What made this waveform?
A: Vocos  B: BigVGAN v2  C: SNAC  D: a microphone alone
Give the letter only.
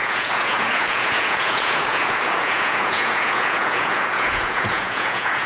A